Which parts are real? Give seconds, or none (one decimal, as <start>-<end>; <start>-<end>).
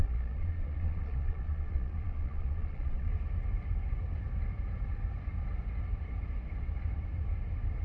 3.1-7.8